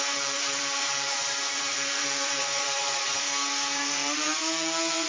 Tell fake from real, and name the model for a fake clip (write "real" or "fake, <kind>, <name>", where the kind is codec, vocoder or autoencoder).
fake, vocoder, Vocos